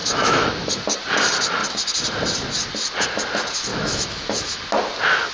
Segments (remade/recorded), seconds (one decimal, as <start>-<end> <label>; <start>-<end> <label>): 0.0-0.7 remade; 0.7-3.7 recorded; 3.7-4.6 remade; 4.6-5.3 recorded